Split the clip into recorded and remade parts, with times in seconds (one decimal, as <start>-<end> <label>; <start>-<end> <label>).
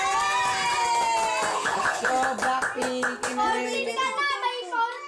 0.0-1.5 recorded; 1.5-2.1 remade; 2.1-5.1 recorded